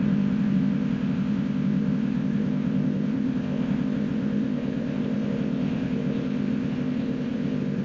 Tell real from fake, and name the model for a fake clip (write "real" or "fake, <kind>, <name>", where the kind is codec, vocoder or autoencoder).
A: fake, codec, ZipCodec